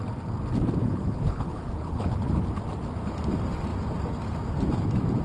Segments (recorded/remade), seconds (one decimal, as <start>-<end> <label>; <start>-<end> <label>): 0.0-0.8 recorded; 0.8-2.4 remade; 2.4-5.2 recorded